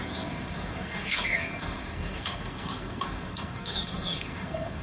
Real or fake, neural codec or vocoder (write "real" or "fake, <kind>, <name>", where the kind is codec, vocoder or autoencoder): fake, codec, SNAC